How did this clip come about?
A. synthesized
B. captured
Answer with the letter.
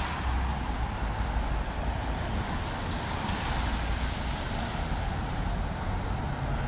B